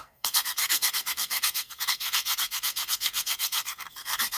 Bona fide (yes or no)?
no